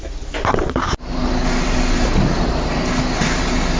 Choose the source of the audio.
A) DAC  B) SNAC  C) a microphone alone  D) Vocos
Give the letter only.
C